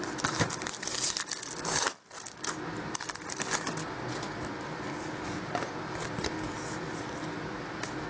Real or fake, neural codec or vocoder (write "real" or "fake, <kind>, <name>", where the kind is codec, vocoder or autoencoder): real